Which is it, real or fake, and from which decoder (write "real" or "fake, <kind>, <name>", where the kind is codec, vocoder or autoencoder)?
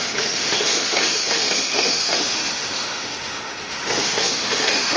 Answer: fake, autoencoder, DAC-VAE